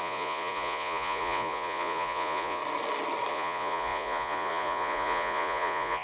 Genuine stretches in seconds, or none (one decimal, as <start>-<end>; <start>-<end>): 2.6-3.3

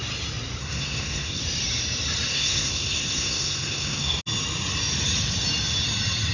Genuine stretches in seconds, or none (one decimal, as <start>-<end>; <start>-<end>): 0.0-0.6; 1.4-2.3; 4.2-6.3

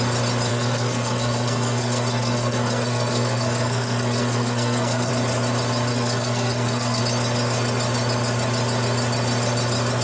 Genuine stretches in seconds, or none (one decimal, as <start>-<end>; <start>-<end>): 0.0-0.5; 5.1-5.9; 7.0-10.0

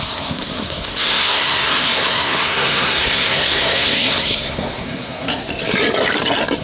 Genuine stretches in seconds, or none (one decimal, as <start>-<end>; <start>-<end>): 5.5-6.6

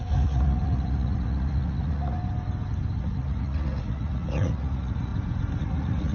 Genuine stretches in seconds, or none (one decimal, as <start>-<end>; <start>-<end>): 2.2-3.0; 5.1-5.6

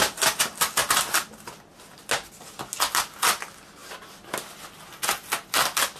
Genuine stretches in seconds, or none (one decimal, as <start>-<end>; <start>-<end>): 0.0-6.0

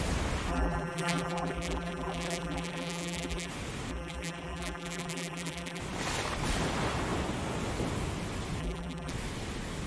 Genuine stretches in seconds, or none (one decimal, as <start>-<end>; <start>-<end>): 0.0-0.5; 3.5-3.9; 5.8-8.6; 9.1-9.9

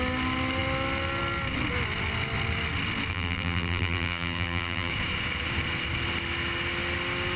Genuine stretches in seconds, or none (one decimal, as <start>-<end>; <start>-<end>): 0.0-3.1; 4.9-7.4